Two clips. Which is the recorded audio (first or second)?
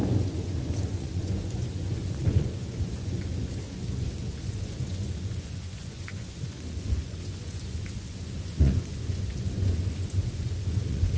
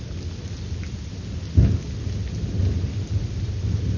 second